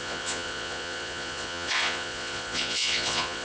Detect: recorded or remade remade